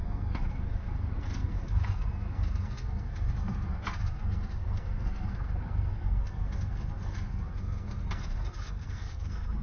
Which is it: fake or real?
fake